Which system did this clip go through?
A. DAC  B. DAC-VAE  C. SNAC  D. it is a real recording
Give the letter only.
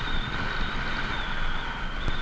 D